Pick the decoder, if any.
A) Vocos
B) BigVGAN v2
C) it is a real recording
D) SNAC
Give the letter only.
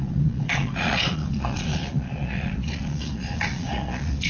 A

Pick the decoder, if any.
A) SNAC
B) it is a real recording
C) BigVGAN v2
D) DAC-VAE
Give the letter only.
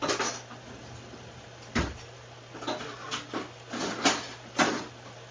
B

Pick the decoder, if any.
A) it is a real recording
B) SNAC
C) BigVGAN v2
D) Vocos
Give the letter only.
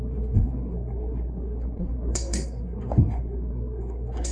B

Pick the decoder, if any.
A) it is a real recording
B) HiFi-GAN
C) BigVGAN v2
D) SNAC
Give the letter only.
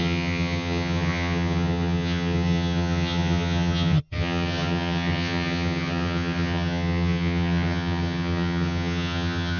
B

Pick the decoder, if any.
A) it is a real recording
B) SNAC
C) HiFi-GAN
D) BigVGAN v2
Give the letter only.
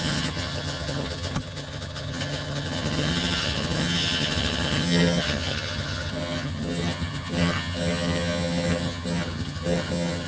C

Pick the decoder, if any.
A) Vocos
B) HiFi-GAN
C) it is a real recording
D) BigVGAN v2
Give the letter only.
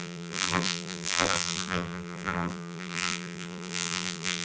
D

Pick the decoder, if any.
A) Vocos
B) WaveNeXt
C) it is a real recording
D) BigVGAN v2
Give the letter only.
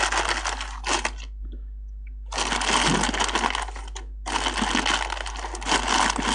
C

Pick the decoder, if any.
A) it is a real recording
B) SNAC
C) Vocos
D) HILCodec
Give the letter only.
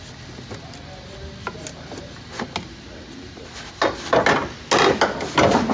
A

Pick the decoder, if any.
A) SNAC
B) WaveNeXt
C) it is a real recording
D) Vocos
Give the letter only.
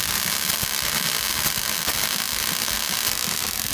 C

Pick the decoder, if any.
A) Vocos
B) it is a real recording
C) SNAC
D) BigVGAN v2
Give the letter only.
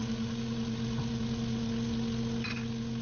B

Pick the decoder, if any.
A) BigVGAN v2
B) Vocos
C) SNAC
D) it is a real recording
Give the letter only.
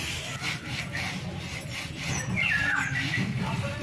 D